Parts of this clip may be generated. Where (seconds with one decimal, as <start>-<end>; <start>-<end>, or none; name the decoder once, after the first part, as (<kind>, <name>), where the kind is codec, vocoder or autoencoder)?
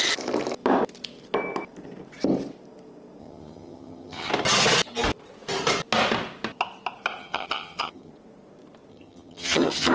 3.2-4.3 (vocoder, HiFi-GAN); 7.2-8.1; 8.9-9.9